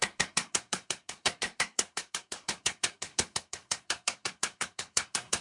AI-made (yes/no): yes